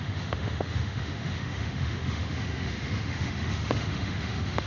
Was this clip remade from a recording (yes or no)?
yes